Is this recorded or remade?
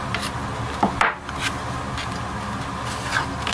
recorded